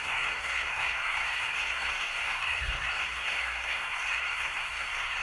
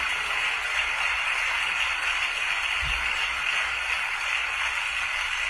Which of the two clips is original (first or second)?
second